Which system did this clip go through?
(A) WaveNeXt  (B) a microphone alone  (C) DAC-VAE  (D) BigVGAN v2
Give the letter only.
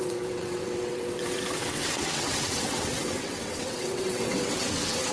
A